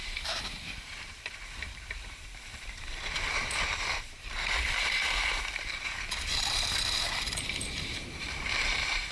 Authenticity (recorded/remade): remade